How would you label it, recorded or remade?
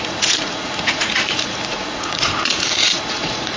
remade